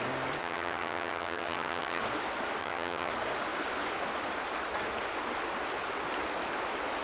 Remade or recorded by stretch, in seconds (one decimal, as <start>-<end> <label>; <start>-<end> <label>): 0.0-0.4 recorded; 0.4-2.0 remade; 2.0-2.6 recorded; 2.6-3.1 remade; 3.1-7.0 recorded